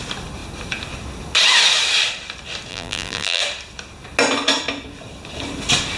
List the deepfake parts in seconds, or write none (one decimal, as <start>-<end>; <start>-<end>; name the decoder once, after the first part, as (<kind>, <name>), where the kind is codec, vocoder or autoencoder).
2.7-3.4 (vocoder, BigVGAN v2)